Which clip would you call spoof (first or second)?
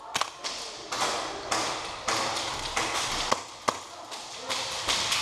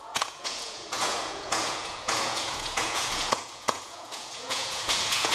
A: second